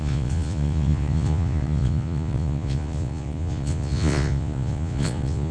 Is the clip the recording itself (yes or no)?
no